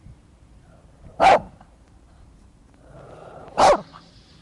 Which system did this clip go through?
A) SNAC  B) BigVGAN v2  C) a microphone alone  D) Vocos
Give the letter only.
B